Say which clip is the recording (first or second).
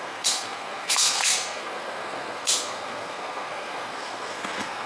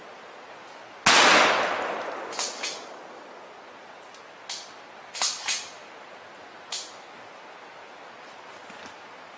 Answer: second